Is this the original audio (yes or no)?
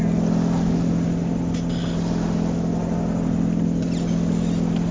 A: yes